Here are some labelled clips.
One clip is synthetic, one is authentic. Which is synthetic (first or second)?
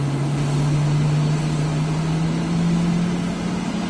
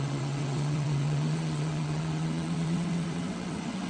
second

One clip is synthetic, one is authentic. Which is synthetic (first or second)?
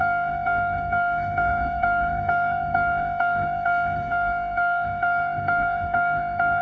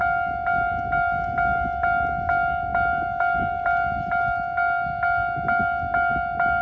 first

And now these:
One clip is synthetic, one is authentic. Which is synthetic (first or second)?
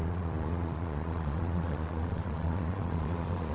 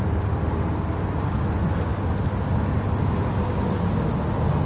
first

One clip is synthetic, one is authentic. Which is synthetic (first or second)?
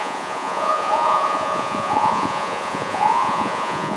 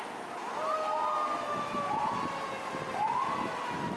first